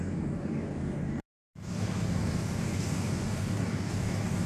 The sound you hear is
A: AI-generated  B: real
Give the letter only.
A